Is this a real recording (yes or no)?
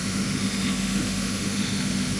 no